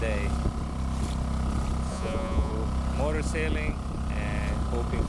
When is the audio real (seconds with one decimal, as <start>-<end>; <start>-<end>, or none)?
0.0-1.9; 2.5-5.1